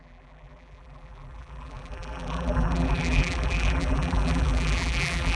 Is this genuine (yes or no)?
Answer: no